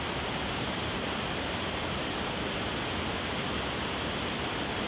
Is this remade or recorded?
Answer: recorded